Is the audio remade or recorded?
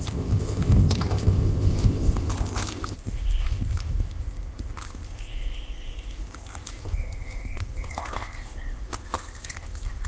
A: remade